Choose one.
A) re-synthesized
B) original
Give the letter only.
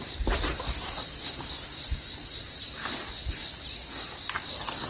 B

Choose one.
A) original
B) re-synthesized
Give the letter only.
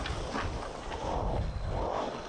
A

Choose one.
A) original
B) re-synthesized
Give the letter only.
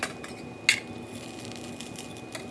A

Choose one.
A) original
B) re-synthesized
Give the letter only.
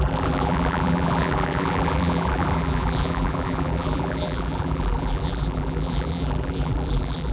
B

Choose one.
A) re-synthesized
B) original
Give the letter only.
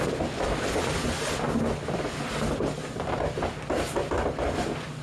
B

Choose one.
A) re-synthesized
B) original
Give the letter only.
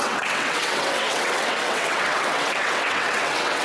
A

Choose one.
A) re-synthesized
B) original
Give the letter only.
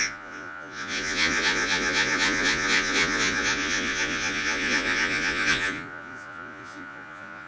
A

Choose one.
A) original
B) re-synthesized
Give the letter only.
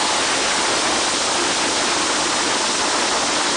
A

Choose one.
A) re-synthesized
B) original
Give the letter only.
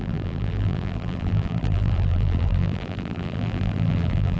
A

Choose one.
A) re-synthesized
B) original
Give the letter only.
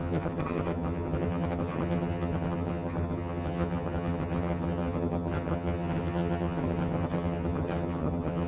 A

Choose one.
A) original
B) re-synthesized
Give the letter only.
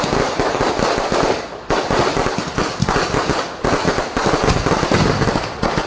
A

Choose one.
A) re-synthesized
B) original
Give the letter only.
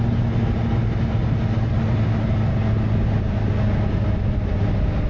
B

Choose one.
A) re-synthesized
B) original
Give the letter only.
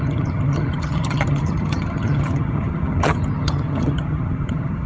A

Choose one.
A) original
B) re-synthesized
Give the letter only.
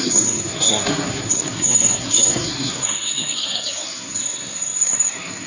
B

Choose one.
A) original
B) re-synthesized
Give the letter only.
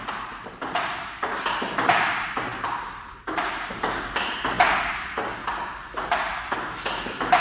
A